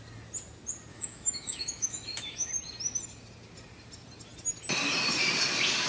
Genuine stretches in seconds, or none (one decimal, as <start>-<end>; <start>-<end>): 0.0-0.9; 2.5-5.9